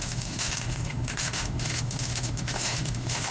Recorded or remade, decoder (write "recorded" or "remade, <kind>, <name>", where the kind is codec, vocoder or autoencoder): remade, autoencoder, DAC-VAE